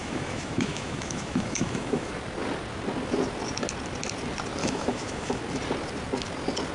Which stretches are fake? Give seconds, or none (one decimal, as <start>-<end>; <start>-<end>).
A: 0.0-2.1; 4.6-5.4